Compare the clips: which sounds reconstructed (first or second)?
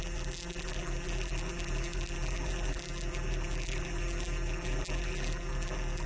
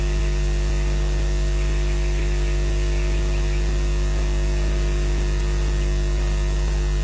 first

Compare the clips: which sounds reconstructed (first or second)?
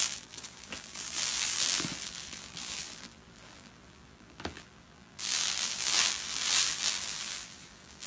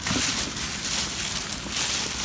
first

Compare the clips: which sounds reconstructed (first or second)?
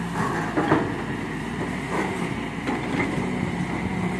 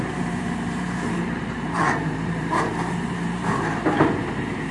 second